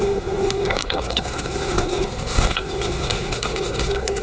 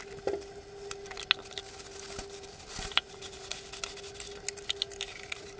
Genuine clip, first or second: second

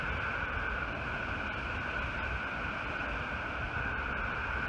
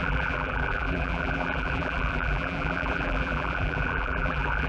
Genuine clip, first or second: first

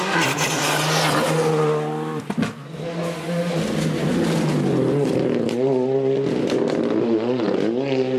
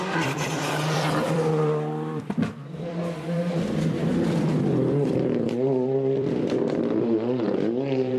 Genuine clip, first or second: first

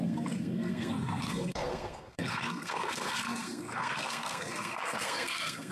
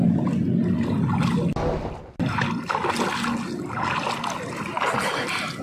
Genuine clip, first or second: second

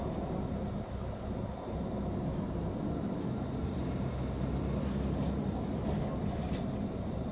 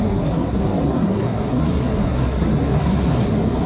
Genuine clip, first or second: first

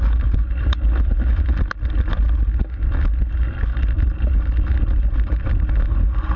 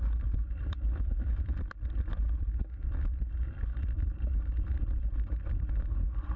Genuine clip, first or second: first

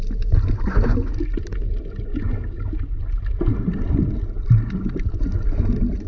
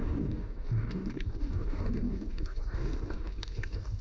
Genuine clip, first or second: first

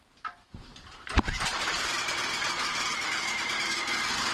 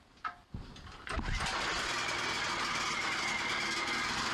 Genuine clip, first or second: second